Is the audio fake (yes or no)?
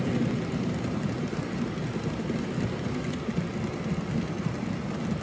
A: no